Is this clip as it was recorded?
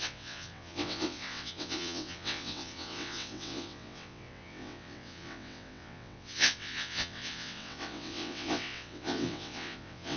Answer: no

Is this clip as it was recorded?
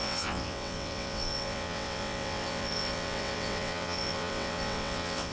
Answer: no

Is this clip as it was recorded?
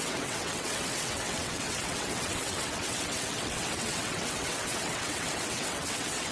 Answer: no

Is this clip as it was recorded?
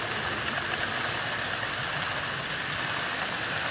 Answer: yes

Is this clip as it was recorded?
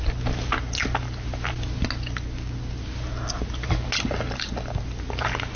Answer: yes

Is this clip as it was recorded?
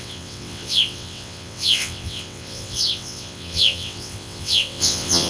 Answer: no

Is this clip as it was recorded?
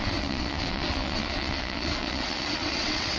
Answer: no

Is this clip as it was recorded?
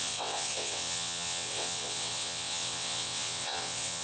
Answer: no